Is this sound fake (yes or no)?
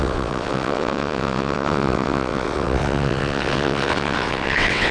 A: yes